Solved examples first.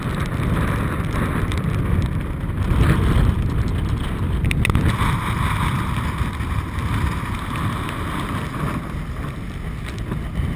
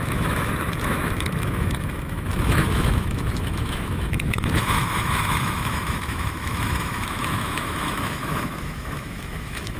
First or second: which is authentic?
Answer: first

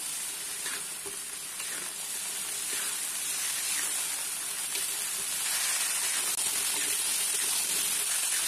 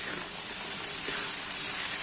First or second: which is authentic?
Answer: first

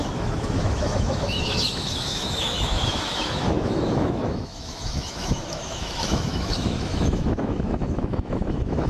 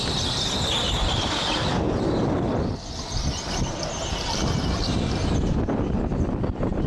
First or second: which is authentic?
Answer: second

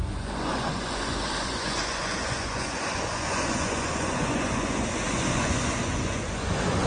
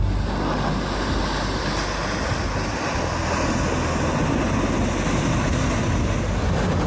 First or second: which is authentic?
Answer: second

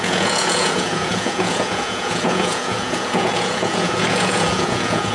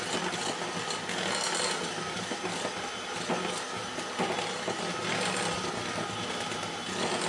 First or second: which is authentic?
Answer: second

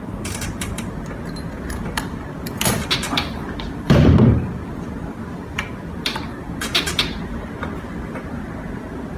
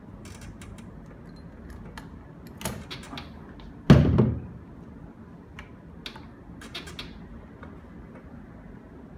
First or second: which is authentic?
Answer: second